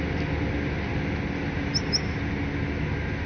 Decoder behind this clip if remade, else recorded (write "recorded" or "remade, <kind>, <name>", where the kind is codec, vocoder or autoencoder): recorded